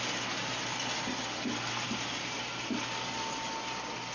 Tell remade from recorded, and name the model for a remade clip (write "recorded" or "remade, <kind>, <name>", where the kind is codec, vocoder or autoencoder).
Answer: recorded